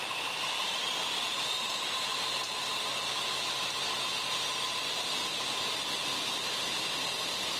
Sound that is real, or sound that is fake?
fake